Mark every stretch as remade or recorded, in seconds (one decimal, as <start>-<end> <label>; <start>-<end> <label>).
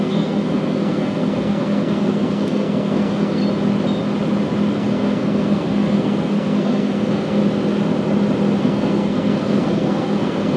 0.0-3.4 remade; 3.4-4.7 recorded; 4.7-7.4 remade; 7.4-8.6 recorded; 8.6-10.6 remade